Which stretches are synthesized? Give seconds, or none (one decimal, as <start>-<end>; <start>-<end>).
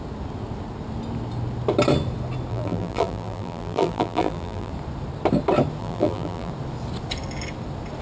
2.5-4.7; 5.8-6.5